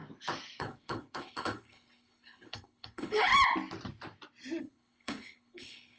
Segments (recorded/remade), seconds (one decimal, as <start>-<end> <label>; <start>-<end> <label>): 0.0-0.6 recorded; 0.6-3.3 remade; 3.3-4.6 recorded; 4.6-6.0 remade